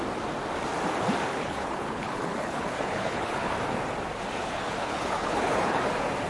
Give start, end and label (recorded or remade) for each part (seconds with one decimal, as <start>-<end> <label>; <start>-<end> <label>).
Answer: 0.0-1.3 recorded; 1.3-3.5 remade; 3.5-4.4 recorded; 4.4-5.8 remade; 5.8-6.3 recorded